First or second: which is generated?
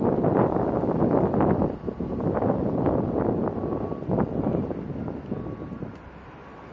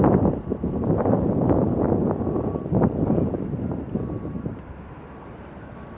second